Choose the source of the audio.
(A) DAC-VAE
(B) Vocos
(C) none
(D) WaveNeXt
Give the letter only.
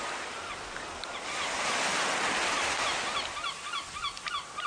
C